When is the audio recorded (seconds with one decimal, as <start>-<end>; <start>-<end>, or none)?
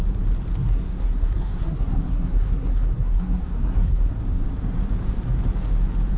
0.0-0.6; 4.1-6.2